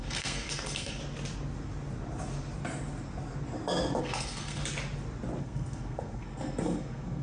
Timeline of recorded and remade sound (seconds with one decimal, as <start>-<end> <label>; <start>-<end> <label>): 0.0-1.0 remade; 1.0-4.0 recorded; 4.0-4.6 remade; 4.6-5.4 recorded; 5.4-7.2 remade